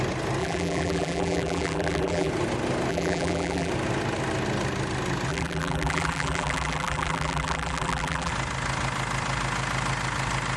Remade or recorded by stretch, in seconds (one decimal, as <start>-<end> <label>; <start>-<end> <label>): 0.0-0.4 recorded; 0.4-2.3 remade; 2.3-2.9 recorded; 2.9-3.7 remade; 3.7-5.3 recorded; 5.3-8.3 remade; 8.3-10.6 recorded